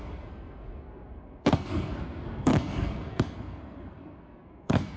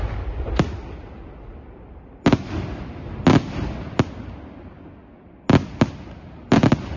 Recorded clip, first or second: second